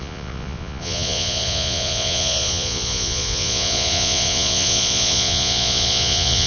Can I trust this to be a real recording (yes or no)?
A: no